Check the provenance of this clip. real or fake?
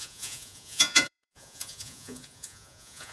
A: fake